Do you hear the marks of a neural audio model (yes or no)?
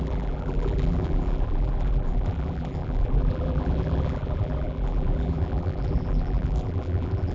yes